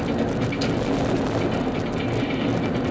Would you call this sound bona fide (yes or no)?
yes